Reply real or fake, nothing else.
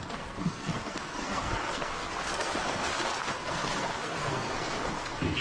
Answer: fake